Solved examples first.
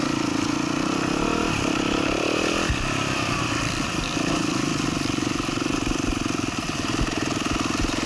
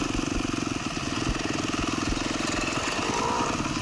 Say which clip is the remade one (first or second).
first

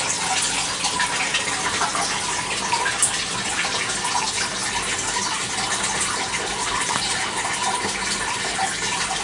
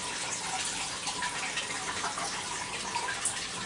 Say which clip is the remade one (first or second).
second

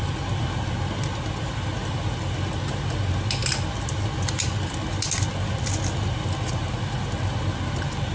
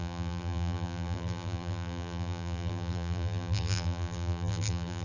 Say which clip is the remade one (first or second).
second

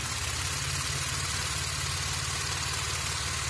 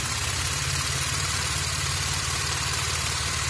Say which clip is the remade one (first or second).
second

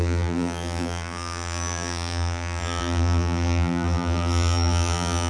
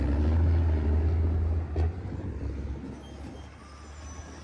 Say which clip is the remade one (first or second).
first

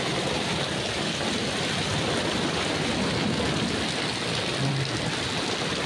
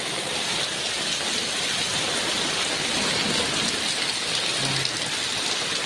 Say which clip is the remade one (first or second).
first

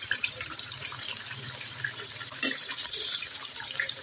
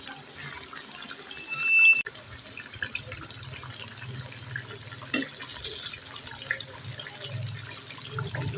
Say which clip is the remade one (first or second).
first